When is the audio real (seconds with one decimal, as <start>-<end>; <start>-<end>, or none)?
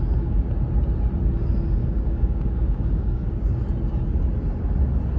0.0-1.8; 3.6-5.2